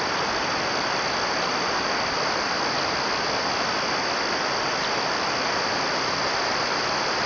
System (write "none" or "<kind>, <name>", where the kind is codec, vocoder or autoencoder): none